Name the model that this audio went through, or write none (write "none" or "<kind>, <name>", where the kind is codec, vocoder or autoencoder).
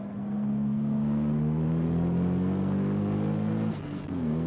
codec, SNAC